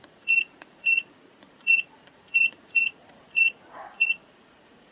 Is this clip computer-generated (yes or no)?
yes